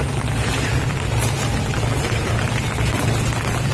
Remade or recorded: recorded